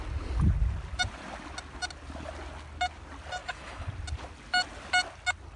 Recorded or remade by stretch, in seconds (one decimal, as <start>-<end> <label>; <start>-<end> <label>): 0.0-3.4 recorded; 3.4-3.9 remade; 3.9-5.6 recorded